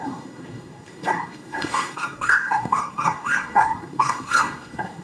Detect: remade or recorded remade